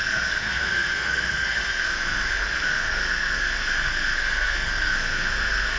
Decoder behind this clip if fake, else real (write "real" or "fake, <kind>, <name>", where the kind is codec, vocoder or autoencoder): fake, codec, SNAC